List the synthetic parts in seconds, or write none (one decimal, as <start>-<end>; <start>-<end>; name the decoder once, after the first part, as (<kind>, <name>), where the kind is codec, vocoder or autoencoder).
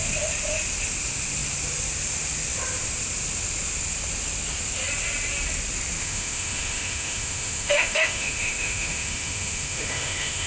6.0-10.5 (autoencoder, DAC-VAE)